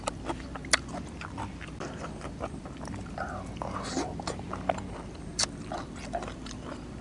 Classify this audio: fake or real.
fake